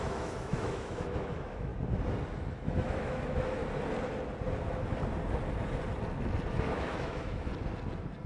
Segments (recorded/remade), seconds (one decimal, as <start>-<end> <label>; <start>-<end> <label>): 0.0-1.7 remade; 1.7-2.5 recorded; 2.5-3.6 remade; 3.6-6.5 recorded; 6.5-7.5 remade; 7.5-8.3 recorded